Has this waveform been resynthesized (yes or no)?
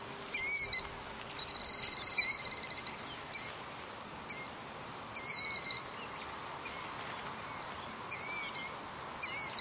no